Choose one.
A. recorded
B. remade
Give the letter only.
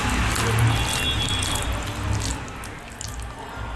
A